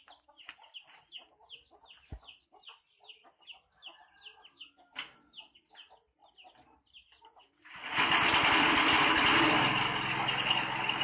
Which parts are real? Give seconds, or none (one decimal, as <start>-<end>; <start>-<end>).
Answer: 0.0-11.0